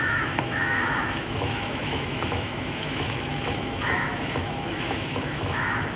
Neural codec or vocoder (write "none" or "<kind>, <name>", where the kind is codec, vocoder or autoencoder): autoencoder, DAC-VAE